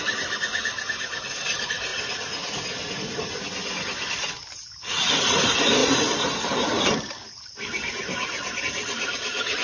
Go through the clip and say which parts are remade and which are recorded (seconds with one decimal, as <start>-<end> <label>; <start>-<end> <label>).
0.0-9.6 recorded